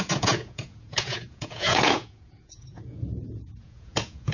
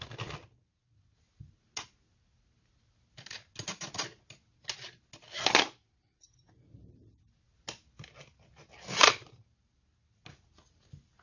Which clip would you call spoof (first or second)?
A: first